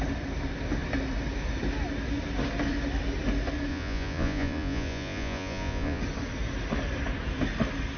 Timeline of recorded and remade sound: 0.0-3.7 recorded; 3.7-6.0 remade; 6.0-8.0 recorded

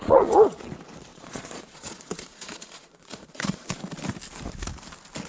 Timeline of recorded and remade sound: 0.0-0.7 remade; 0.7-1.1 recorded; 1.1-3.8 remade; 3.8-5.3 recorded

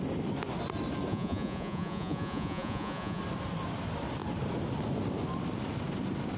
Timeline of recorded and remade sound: 0.0-1.1 recorded; 1.1-3.2 remade; 3.2-6.4 recorded

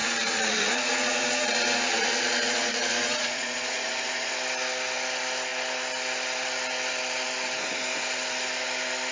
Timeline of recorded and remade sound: 0.0-4.3 remade; 4.3-9.1 recorded

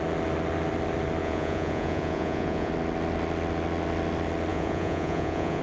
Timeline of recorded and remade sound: 0.0-1.2 recorded; 1.2-2.7 remade; 2.7-4.5 recorded; 4.5-5.6 remade

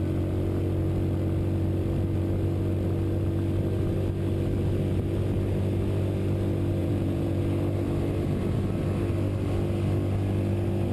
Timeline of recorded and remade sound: 0.0-6.8 recorded; 6.8-7.4 remade; 7.4-10.9 recorded

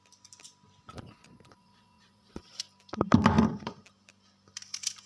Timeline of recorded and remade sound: 0.0-0.9 recorded; 0.9-2.6 remade; 2.6-5.1 recorded

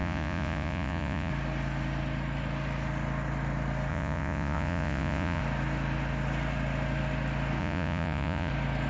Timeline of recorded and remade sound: 0.0-1.3 remade; 1.3-3.9 recorded; 3.9-5.4 remade; 5.4-7.6 recorded; 7.6-8.5 remade; 8.5-8.9 recorded